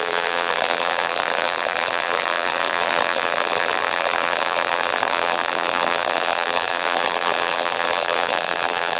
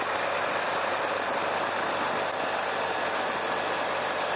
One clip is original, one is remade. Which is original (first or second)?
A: second